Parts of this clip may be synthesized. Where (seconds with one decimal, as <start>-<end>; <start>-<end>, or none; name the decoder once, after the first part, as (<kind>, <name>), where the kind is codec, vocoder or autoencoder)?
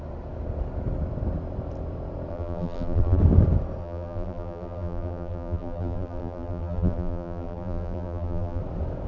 2.3-3.2 (vocoder, BigVGAN v2); 3.8-8.6